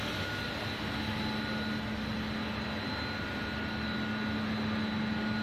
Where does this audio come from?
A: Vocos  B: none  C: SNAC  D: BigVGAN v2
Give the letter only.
B